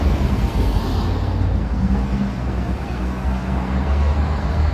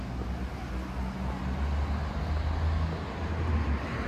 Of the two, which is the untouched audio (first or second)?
second